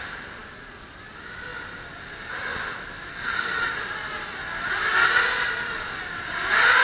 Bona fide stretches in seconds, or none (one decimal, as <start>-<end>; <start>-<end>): 0.0-3.1; 3.6-6.8